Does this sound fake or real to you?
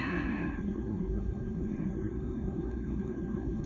fake